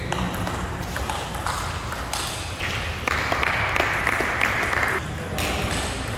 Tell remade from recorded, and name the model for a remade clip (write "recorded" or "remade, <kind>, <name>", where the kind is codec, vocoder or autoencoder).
recorded